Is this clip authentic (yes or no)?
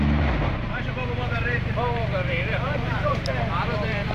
no